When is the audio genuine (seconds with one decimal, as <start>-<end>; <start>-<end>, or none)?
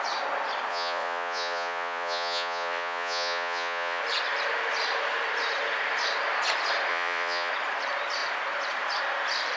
0.0-0.7; 4.0-6.9; 7.5-9.6